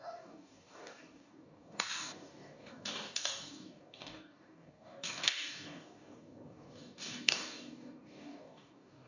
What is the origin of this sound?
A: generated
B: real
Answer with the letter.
A